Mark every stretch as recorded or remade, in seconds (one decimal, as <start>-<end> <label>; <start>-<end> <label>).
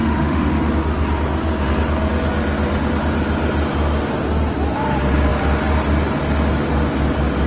0.0-0.5 remade; 0.5-7.5 recorded